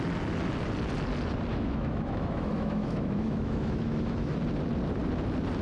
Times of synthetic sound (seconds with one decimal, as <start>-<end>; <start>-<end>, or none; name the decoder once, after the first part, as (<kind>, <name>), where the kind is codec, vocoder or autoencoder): 1.5-4.3 (autoencoder, DAC-VAE)